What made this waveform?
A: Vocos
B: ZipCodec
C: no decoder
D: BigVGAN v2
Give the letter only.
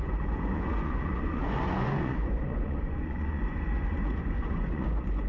A